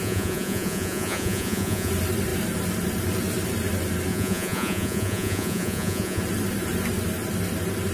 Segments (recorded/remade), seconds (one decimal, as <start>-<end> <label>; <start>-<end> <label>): 0.0-1.9 remade; 1.9-4.1 recorded; 4.1-6.2 remade; 6.2-7.9 recorded